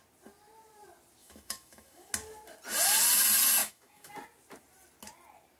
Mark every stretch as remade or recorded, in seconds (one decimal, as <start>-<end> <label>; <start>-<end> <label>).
0.0-1.2 recorded; 1.2-2.1 remade; 2.1-3.6 recorded; 3.6-4.1 remade; 4.1-5.6 recorded